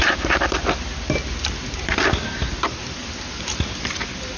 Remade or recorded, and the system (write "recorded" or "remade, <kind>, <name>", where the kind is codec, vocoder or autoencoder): recorded